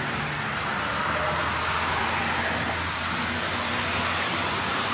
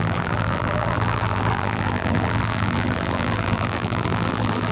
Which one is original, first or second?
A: first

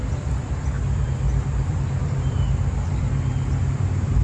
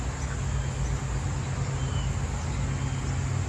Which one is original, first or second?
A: second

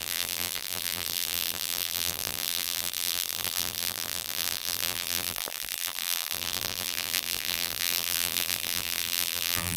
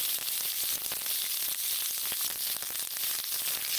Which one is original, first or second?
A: second